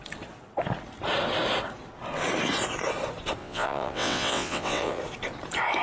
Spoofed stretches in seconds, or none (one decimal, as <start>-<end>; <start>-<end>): 3.4-5.0